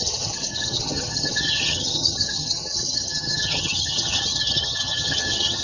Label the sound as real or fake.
fake